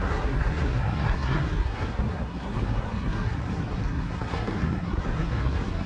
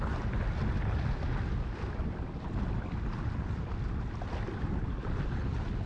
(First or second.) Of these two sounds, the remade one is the first